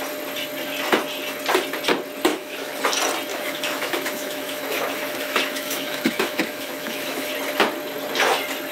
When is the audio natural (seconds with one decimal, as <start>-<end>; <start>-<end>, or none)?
0.0-2.3; 2.8-3.3; 7.3-8.7